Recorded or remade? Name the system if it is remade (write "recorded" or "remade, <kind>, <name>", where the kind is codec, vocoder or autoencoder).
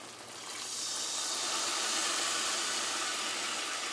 recorded